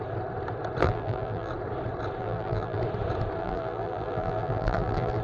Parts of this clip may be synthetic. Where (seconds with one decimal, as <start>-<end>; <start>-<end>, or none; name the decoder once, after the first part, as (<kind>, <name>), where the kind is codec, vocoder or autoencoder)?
0.8-1.5 (vocoder, BigVGAN v2); 2.2-2.8; 3.4-5.2